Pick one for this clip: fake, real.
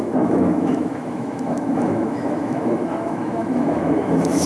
fake